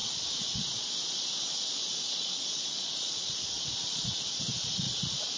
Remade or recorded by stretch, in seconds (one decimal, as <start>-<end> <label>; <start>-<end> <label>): 0.0-5.4 remade